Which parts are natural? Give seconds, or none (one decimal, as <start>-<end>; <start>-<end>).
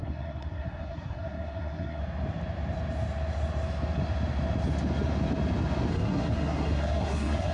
2.0-5.9